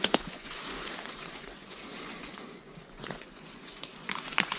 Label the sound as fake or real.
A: fake